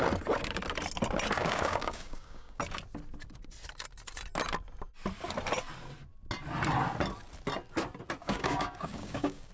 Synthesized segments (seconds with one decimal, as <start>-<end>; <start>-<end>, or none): 1.4-2.6; 8.2-9.5